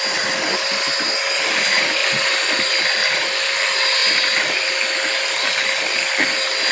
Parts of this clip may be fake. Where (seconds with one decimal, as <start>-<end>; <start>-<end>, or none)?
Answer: none